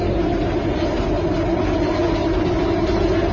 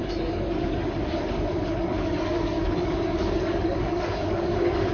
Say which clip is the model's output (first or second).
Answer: second